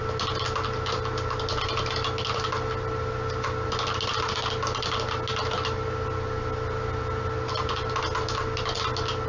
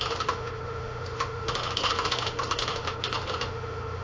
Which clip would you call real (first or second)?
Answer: first